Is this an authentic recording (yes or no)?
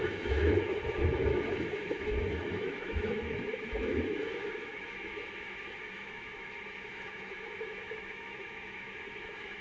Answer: no